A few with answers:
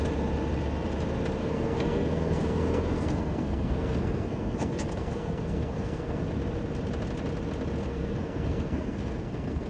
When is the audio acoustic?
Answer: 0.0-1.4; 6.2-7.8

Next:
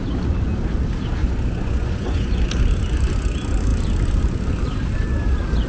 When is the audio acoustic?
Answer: 0.0-1.2; 2.5-5.7

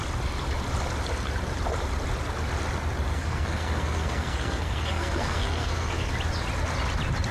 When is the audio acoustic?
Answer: 0.0-3.1; 6.1-7.3

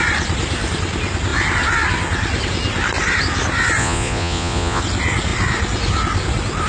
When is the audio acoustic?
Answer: 0.0-3.8; 4.8-6.7

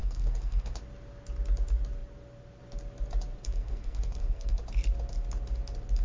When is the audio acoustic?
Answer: 0.8-3.4; 4.6-6.0